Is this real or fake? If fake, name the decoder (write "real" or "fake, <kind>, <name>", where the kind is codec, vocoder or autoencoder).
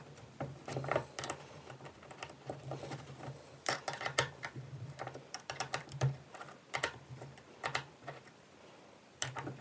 fake, vocoder, BigVGAN v2